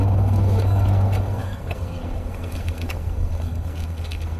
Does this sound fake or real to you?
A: fake